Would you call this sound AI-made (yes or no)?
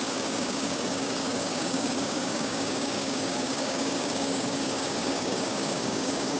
yes